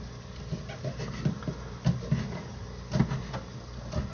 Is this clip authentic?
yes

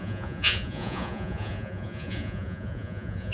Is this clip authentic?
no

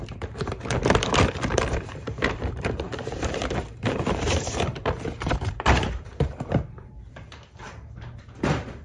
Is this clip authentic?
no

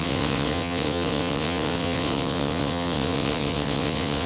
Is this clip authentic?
no